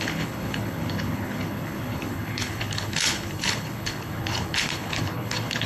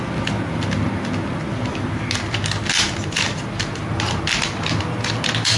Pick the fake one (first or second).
first